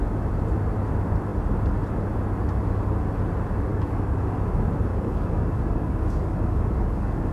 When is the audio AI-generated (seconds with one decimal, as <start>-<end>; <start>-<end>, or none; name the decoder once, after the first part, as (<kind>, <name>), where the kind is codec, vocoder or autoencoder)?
3.7-4.2 (codec, DAC); 4.9-7.3